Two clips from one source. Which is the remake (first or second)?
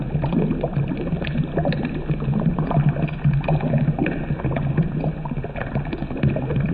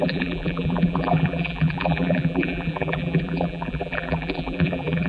second